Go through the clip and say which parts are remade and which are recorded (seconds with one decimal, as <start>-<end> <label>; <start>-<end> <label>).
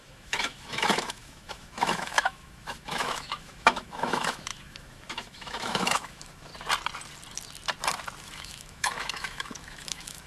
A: 0.0-6.5 remade; 6.5-8.2 recorded; 8.2-10.3 remade